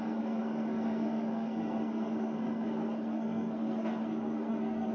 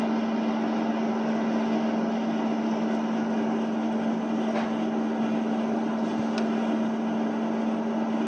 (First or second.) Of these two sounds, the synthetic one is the first